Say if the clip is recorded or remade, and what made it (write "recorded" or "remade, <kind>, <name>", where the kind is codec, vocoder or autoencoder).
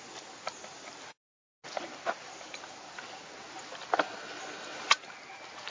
recorded